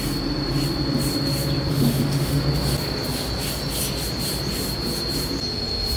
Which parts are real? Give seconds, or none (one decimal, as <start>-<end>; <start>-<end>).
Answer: 0.0-1.7; 2.4-6.0